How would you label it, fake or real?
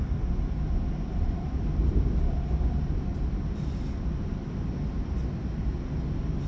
real